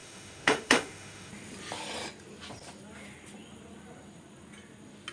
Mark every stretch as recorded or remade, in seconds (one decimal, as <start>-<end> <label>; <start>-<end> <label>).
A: 0.0-1.3 remade; 1.3-5.1 recorded